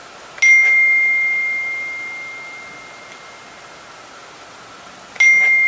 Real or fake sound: real